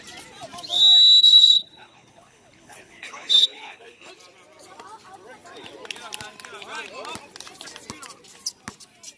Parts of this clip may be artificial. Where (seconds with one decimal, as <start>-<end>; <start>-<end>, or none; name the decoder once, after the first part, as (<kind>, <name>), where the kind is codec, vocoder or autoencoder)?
1.2-4.1 (codec, HILCodec)